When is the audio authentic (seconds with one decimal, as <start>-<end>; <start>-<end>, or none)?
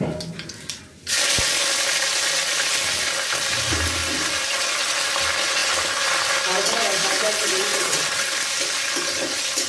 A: 0.0-7.7; 8.3-9.7